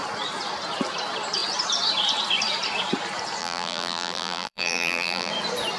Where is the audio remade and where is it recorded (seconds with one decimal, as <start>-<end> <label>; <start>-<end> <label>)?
0.0-3.4 recorded; 3.4-5.3 remade; 5.3-5.8 recorded